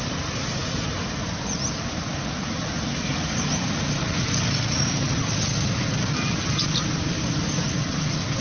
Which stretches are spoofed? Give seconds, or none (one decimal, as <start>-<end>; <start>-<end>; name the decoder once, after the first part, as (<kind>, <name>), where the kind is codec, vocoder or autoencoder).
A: none